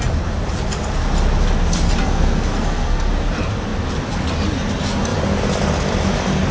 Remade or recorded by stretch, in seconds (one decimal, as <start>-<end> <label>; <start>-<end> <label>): 0.0-2.0 recorded; 2.0-3.1 remade; 3.1-6.5 recorded